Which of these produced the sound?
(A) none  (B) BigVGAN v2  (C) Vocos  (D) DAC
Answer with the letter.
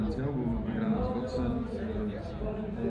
A